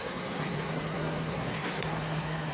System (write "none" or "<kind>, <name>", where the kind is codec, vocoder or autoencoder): codec, SNAC